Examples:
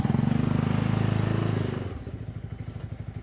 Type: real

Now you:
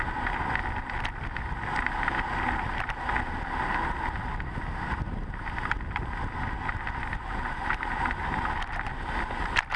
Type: real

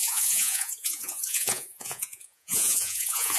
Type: fake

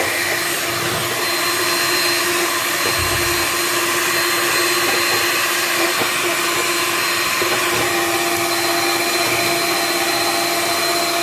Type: real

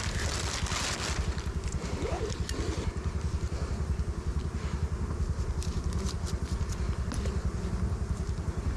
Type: real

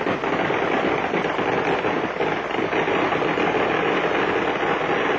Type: real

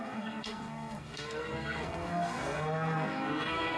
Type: fake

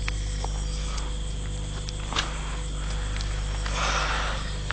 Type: real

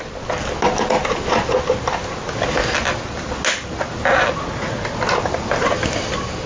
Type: real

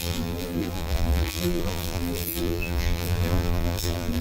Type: fake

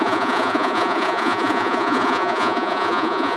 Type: fake